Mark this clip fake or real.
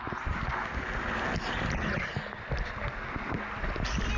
real